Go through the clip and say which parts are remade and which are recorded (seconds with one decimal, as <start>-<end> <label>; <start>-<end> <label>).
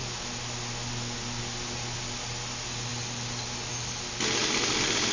0.0-5.1 recorded